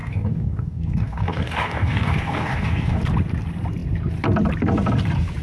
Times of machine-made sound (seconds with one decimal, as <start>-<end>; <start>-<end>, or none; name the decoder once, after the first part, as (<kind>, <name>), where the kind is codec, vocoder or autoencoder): 0.0-3.0 (codec, DAC)